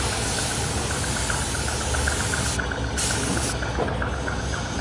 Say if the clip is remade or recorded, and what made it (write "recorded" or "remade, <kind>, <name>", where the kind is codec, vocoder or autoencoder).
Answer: recorded